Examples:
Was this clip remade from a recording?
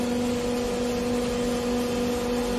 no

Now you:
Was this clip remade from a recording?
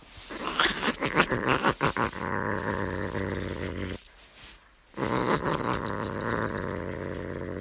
no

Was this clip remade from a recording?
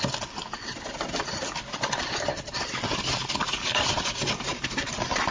no